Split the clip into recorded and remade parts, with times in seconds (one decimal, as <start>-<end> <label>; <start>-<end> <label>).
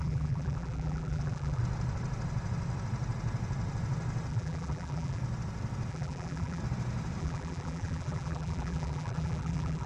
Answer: 0.0-1.6 remade; 1.6-4.3 recorded; 4.3-5.2 remade; 5.2-5.9 recorded; 5.9-6.6 remade; 6.6-7.2 recorded; 7.2-9.9 remade